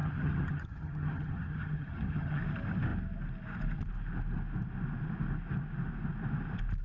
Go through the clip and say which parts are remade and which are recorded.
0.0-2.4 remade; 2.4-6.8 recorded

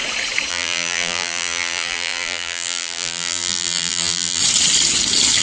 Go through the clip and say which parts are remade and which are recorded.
0.0-0.5 recorded; 0.5-4.4 remade; 4.4-5.4 recorded

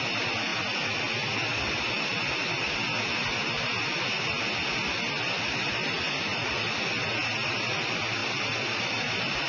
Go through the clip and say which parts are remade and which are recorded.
0.0-9.5 recorded

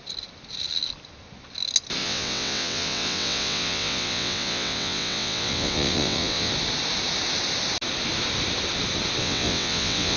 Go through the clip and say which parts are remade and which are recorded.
0.0-2.0 recorded; 2.0-6.5 remade; 6.5-9.2 recorded; 9.2-10.2 remade

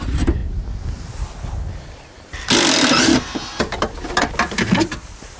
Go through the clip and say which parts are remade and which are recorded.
0.0-5.4 recorded